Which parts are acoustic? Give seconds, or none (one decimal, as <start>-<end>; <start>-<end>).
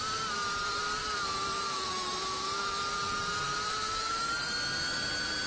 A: 0.0-1.0; 4.3-5.5